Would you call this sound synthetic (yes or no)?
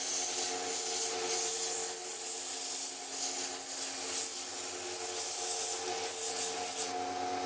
no